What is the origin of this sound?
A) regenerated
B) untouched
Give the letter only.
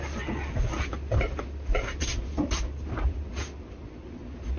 B